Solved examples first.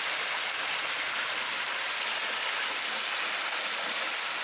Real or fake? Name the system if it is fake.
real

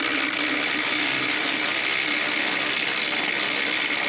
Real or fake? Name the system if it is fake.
real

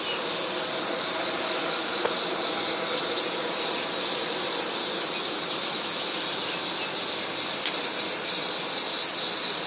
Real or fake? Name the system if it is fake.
real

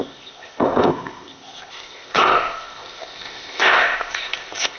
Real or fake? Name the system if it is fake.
fake, codec, ZipCodec